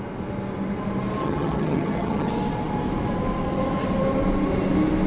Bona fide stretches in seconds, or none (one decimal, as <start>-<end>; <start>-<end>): 0.0-1.2; 2.3-5.1